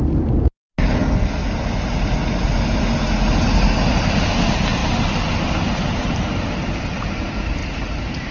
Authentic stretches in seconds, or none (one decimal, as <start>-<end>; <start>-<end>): 0.0-8.3